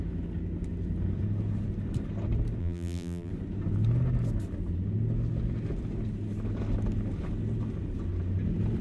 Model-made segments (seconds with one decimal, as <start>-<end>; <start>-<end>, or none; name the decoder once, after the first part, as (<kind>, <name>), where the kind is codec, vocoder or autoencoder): 2.6-3.3 (vocoder, BigVGAN v2)